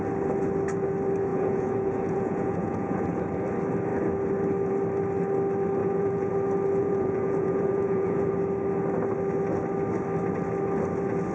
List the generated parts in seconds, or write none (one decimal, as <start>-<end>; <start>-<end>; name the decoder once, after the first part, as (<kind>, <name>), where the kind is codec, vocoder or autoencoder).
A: 1.3-3.2 (vocoder, Vocos); 5.8-6.3; 6.8-8.3